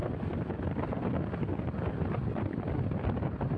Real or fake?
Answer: real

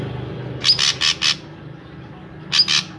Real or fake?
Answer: real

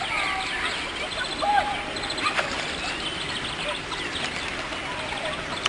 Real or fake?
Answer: real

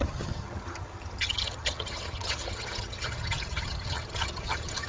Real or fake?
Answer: fake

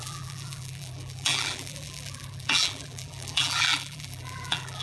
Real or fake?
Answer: fake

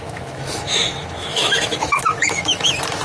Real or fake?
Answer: fake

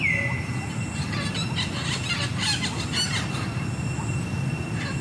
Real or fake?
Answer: real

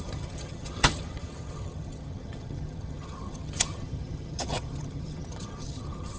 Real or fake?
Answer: fake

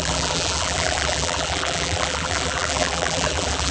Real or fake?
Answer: fake